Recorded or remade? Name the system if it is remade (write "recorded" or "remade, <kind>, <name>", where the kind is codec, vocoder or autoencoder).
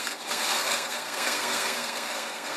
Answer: remade, codec, SNAC